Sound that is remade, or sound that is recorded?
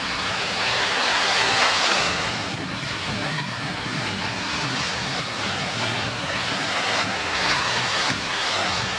remade